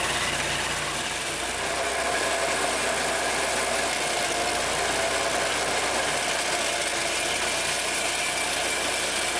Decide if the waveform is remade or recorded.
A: recorded